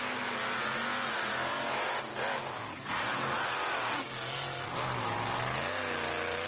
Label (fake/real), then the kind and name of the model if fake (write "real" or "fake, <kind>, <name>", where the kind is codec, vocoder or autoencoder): real